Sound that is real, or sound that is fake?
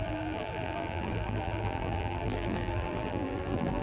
fake